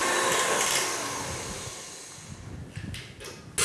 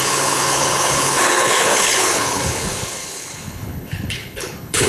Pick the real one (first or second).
first